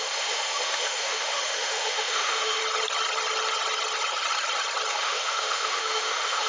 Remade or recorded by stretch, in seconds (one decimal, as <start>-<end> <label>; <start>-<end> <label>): 0.0-2.6 remade; 2.6-4.9 recorded; 4.9-6.5 remade